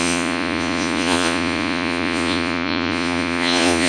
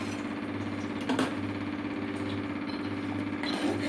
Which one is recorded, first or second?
second